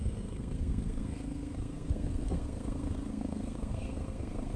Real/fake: fake